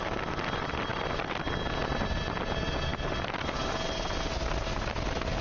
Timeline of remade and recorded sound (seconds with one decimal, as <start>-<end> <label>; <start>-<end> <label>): 0.0-5.4 recorded